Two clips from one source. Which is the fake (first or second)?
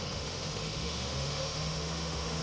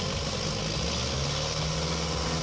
first